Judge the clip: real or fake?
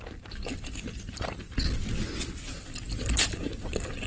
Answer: real